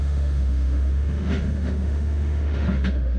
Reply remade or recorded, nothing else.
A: remade